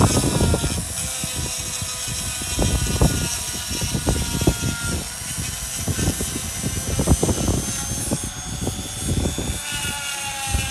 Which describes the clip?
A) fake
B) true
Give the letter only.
B